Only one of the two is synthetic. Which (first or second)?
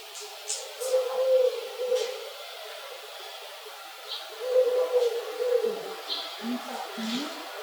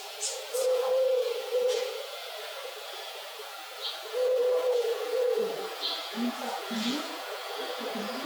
second